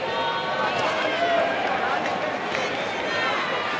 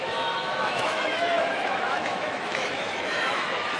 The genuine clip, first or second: first